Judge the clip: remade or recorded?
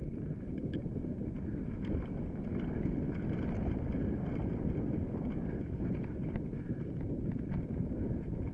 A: recorded